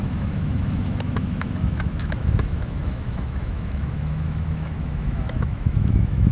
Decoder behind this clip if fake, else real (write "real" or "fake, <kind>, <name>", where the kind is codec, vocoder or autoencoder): fake, autoencoder, DAC-VAE